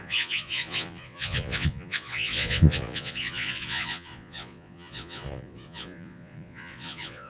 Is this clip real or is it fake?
fake